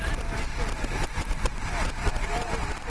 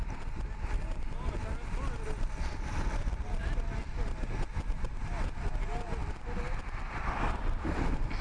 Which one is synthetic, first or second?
first